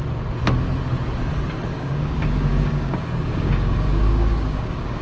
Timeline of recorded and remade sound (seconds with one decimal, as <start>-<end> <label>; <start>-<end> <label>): 0.0-1.7 recorded; 1.7-5.0 remade